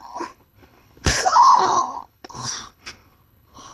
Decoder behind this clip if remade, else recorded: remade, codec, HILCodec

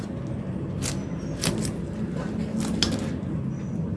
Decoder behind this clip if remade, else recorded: recorded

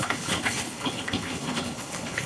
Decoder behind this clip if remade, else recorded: remade, codec, HILCodec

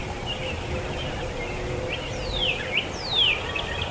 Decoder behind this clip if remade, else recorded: recorded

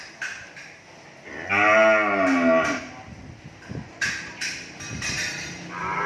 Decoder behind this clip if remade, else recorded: recorded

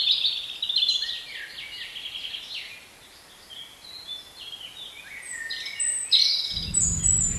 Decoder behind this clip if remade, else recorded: recorded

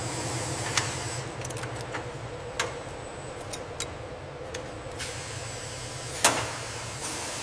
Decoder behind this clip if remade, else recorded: recorded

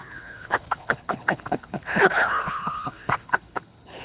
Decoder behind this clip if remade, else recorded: remade, codec, HILCodec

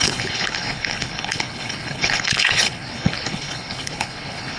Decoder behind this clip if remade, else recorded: remade, codec, HILCodec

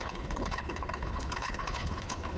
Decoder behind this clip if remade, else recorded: remade, codec, HILCodec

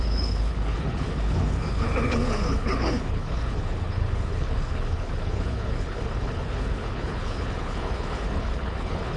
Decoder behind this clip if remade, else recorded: remade, codec, HILCodec